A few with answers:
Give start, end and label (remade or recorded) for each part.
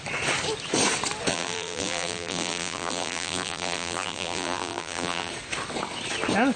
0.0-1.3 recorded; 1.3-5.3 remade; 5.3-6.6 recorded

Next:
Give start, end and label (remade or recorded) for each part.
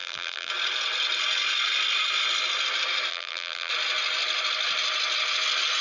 0.0-0.5 remade; 0.5-3.1 recorded; 3.1-3.7 remade; 3.7-5.8 recorded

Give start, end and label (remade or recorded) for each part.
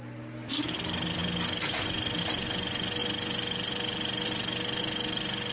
0.0-5.5 recorded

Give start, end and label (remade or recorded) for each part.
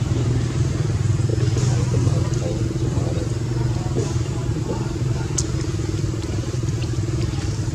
0.0-1.3 remade; 1.3-2.8 recorded; 2.8-7.7 remade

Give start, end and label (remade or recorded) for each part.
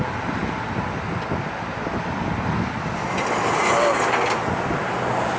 0.0-5.4 recorded